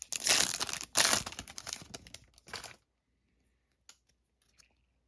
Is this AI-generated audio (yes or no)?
no